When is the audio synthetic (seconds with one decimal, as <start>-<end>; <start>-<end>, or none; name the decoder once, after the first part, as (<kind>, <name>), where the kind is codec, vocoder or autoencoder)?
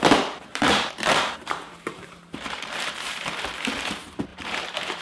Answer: 0.5-3.5 (vocoder, BigVGAN v2); 4.3-5.0